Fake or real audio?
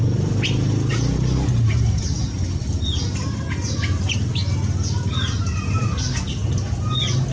real